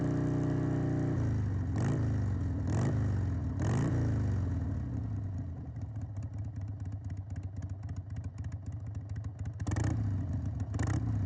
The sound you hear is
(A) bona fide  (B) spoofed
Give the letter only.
A